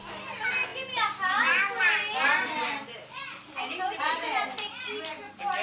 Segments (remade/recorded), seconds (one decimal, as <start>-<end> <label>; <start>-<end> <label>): 0.0-5.6 recorded